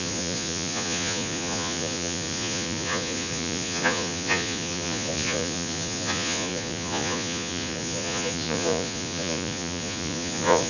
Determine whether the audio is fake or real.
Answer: fake